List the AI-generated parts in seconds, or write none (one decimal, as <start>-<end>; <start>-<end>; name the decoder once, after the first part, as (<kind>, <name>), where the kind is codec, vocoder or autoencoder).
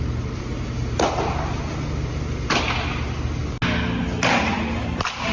none